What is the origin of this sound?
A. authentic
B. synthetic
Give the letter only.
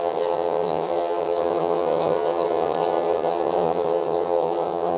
B